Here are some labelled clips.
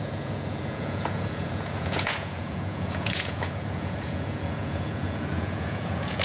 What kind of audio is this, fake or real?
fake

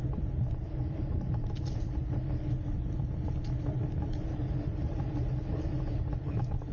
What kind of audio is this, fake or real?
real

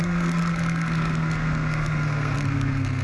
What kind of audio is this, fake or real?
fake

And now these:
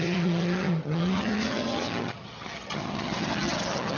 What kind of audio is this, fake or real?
fake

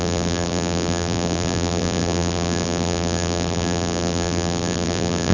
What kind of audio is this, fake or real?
fake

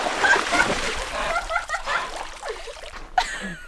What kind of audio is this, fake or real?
fake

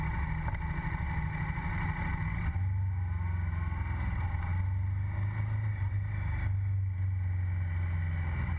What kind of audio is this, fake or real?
real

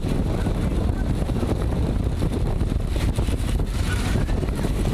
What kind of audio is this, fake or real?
fake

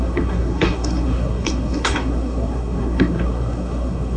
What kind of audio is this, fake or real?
fake